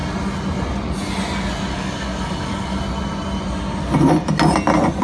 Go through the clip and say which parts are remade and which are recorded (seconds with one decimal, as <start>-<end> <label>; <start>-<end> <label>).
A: 0.0-1.7 recorded; 1.7-2.8 remade; 2.8-5.0 recorded